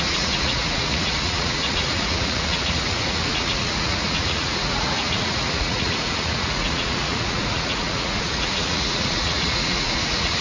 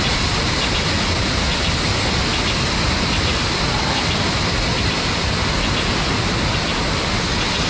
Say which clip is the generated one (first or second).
first